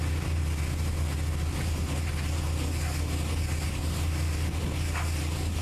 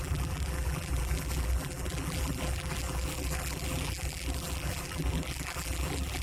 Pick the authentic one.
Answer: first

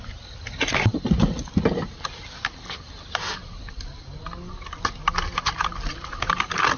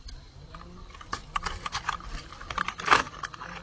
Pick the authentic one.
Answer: first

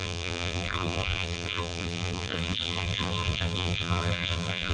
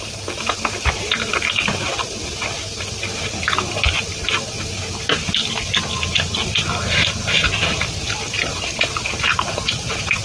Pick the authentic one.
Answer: second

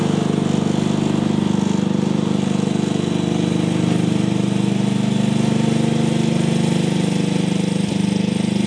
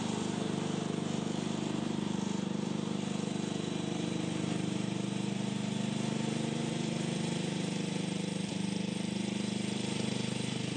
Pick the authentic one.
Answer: first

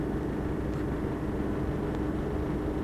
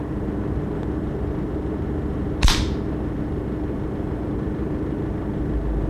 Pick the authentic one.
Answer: first